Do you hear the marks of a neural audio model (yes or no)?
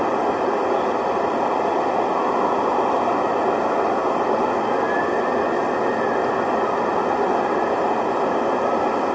no